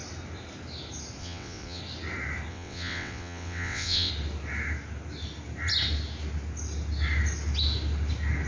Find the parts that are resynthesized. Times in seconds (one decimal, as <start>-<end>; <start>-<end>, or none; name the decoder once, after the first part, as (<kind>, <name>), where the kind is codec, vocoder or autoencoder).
1.2-1.8 (vocoder, WaveNeXt); 2.5-4.1